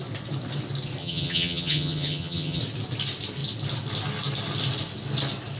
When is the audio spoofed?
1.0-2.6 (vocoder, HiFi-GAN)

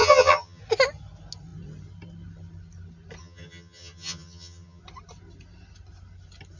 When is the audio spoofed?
0.0-0.6 (vocoder, HiFi-GAN); 3.2-4.8

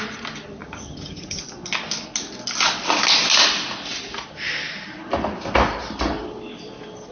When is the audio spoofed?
0.6-1.4 (vocoder, HiFi-GAN)

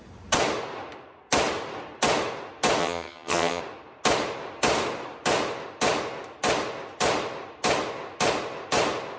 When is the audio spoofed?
2.8-3.6 (vocoder, HiFi-GAN)

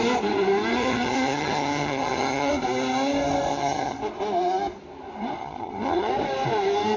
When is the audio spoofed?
0.7-2.5 (vocoder, HiFi-GAN); 3.5-4.0; 5.4-6.1